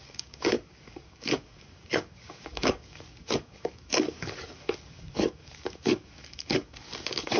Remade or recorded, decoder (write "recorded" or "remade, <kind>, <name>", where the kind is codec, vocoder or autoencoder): remade, codec, DAC